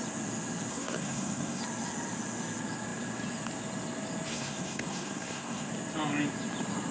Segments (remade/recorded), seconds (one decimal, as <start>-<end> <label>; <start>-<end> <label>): 0.0-0.7 recorded; 0.7-1.6 remade; 1.6-4.3 recorded; 4.3-5.7 remade; 5.7-6.9 recorded